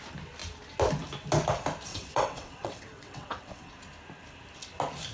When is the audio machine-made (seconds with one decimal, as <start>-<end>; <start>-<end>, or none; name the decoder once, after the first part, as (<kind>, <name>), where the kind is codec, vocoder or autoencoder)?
1.9-3.7 (vocoder, WaveNeXt)